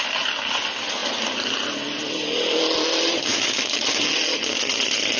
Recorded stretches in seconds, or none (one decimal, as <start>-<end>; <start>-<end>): 0.0-3.3; 3.8-5.2